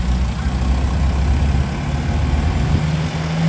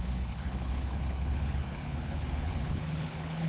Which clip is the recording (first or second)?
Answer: first